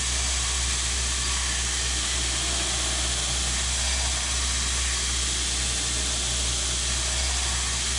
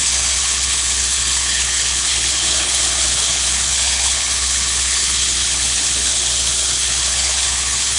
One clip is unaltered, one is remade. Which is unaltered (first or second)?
first